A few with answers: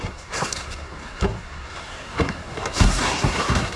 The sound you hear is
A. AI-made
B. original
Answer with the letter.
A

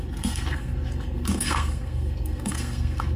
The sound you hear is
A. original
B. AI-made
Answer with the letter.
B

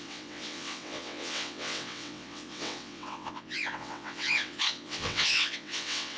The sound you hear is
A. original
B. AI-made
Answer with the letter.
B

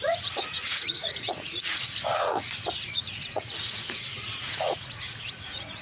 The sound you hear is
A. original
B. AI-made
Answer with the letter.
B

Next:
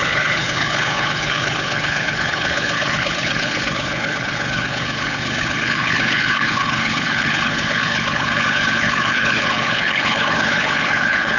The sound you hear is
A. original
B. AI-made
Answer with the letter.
B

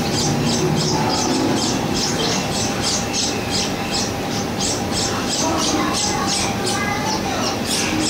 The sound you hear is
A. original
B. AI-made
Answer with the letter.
A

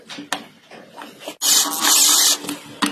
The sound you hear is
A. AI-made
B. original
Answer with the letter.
B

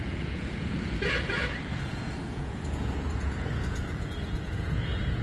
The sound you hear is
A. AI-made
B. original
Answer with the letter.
A